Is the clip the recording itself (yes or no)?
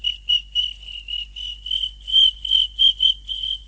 yes